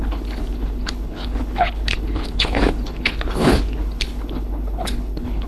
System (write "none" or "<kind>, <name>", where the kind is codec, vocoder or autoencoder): codec, HILCodec